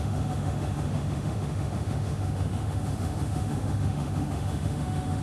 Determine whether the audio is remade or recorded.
remade